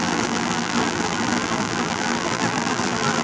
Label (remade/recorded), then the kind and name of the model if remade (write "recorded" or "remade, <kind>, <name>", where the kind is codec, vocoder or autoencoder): remade, vocoder, BigVGAN v2